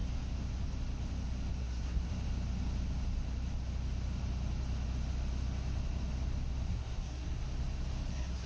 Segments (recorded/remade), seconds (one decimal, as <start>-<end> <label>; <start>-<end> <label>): 0.0-1.6 recorded; 1.6-2.1 remade; 2.1-6.7 recorded; 6.7-7.4 remade; 7.4-8.1 recorded; 8.1-8.5 remade